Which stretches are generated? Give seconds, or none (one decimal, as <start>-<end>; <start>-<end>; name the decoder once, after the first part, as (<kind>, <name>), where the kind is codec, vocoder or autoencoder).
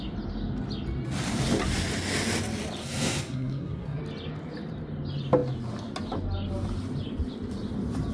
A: 2.8-4.0 (codec, SNAC)